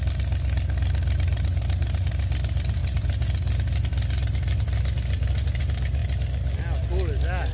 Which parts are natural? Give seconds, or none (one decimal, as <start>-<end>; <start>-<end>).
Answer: 0.0-7.5